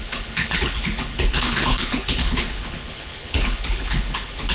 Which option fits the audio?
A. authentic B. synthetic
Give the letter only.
B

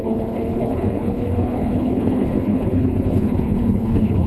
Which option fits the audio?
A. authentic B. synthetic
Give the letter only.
B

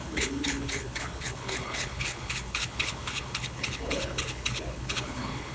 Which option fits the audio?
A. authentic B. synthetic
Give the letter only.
B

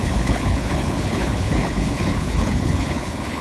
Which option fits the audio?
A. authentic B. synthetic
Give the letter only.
B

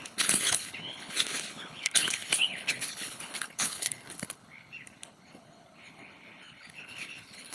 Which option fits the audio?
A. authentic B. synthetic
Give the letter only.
B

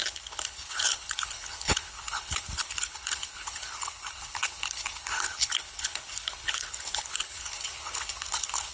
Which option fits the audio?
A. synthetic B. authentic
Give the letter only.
A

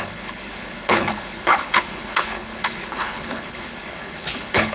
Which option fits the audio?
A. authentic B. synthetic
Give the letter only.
B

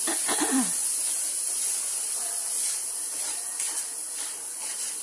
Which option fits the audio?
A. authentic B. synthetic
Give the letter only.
A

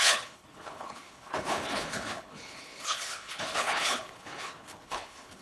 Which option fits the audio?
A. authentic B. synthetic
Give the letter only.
B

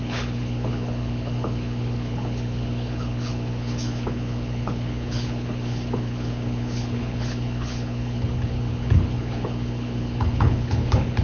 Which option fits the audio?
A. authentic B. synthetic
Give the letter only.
B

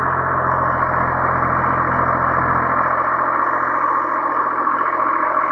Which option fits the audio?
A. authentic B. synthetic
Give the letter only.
A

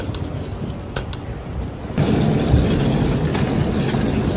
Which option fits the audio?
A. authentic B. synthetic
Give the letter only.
A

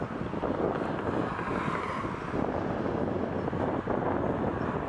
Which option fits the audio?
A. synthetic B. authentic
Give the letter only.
B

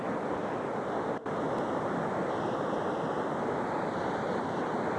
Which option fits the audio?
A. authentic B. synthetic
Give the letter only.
A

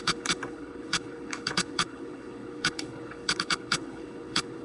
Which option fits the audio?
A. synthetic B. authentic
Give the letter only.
A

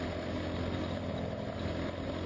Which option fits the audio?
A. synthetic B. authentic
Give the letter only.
B